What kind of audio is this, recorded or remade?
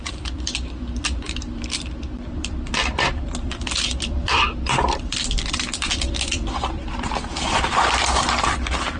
remade